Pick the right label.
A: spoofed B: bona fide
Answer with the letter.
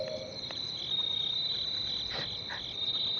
B